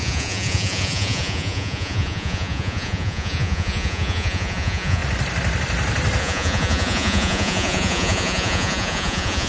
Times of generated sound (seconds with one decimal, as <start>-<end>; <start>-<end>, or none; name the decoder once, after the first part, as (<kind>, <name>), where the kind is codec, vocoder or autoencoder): 0.0-5.0 (vocoder, Vocos); 6.2-9.5